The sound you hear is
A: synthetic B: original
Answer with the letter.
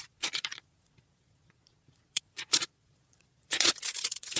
A